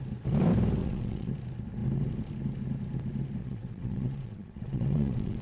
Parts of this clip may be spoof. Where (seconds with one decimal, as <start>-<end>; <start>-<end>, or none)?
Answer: 0.8-1.3; 3.4-5.4

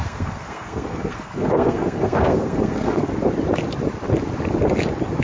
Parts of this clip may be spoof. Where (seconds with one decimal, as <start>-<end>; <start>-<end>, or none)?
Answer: 0.0-3.1